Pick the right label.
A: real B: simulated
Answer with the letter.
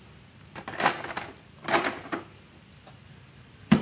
A